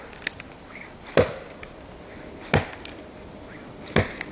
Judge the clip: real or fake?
real